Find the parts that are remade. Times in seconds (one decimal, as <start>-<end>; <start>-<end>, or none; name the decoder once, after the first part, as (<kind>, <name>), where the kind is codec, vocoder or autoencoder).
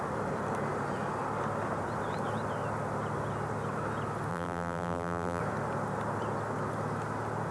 4.3-5.4 (vocoder, BigVGAN v2)